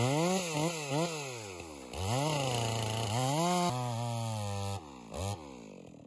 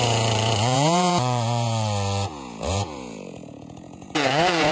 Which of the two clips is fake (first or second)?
second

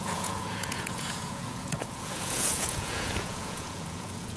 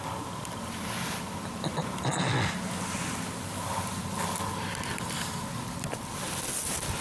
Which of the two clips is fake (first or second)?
first